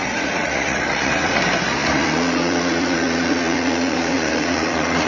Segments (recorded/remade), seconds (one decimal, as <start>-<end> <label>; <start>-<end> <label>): 0.0-1.4 remade; 1.4-1.8 recorded; 1.8-5.1 remade

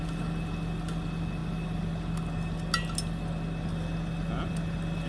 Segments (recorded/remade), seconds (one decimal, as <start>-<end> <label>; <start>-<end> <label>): 0.0-5.1 recorded

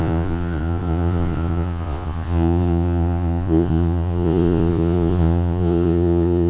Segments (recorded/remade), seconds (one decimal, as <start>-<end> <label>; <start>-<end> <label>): 0.0-6.5 remade

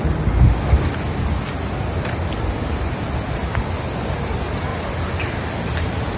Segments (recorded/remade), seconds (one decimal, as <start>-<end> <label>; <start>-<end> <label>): 0.0-6.2 recorded

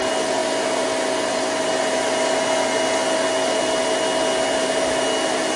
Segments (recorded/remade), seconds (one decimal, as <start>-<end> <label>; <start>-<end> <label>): 0.0-5.6 recorded

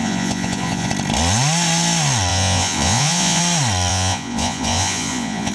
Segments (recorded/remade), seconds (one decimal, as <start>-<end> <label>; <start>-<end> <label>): 0.0-0.9 remade; 0.9-2.3 recorded; 2.3-3.4 remade; 3.4-3.9 recorded; 3.9-5.5 remade

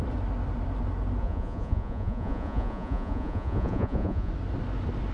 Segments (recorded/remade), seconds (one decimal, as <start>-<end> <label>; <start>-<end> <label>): 0.0-1.2 recorded; 1.2-4.3 remade; 4.3-5.1 recorded